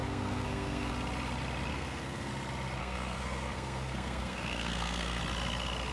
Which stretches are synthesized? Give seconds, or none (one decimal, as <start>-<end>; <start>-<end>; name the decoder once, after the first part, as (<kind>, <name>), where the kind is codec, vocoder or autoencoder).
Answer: 0.0-0.9 (codec, SNAC); 1.7-2.3; 2.8-5.2

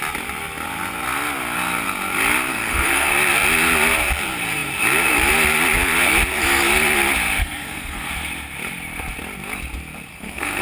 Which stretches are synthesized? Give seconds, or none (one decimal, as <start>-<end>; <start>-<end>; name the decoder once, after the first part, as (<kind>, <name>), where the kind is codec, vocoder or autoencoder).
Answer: 2.5-3.1 (codec, SNAC); 7.4-8.1; 10.1-10.6